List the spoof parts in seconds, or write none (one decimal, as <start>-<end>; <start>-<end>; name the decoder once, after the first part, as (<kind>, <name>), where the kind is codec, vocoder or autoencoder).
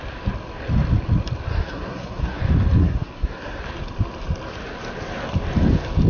1.5-2.4 (codec, SNAC); 2.8-3.6